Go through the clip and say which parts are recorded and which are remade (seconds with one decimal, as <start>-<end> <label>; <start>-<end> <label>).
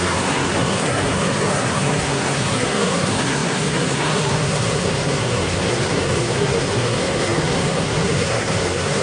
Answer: 0.0-9.0 remade